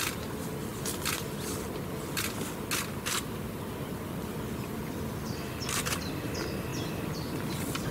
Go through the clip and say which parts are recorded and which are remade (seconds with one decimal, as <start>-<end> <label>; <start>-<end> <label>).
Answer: 0.0-7.9 recorded